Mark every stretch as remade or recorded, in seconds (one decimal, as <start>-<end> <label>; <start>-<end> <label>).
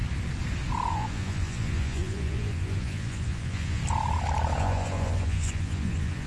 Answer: 0.0-0.9 recorded; 0.9-3.8 remade; 3.8-4.6 recorded; 4.6-6.3 remade